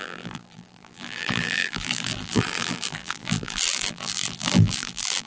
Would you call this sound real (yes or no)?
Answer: no